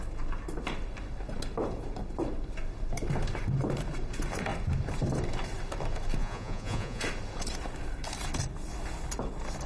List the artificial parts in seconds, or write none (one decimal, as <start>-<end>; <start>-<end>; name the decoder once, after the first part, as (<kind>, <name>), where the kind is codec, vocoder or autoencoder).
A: 6.2-7.0 (vocoder, Vocos)